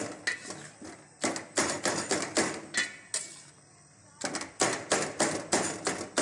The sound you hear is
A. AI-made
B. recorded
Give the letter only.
B